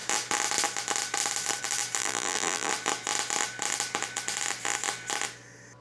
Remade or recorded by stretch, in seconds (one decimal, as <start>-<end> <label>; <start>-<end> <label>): 0.0-2.0 recorded; 2.0-2.7 remade; 2.7-5.8 recorded

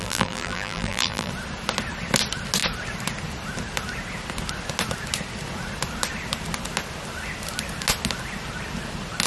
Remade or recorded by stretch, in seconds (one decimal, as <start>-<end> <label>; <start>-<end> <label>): 0.0-1.3 remade; 1.3-9.3 recorded

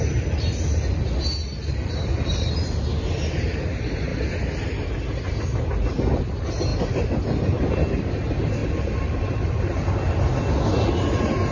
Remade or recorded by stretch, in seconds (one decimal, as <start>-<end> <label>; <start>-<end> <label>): 0.0-1.5 recorded; 1.5-2.5 remade; 2.5-8.6 recorded; 8.6-10.4 remade; 10.4-11.5 recorded

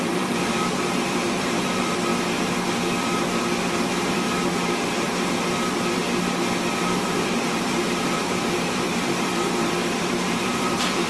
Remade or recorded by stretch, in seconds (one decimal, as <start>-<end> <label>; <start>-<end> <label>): 0.0-2.1 remade; 2.1-3.7 recorded; 3.7-6.0 remade; 6.0-6.7 recorded; 6.7-11.1 remade

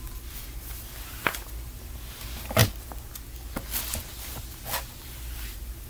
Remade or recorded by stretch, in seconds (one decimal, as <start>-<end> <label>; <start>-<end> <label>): 0.0-5.9 recorded

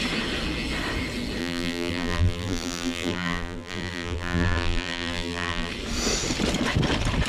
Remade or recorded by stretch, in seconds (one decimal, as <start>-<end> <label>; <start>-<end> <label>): 0.0-1.4 recorded; 1.4-5.7 remade; 5.7-7.3 recorded